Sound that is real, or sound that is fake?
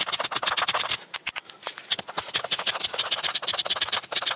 real